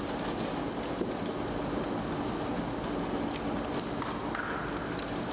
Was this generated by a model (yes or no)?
no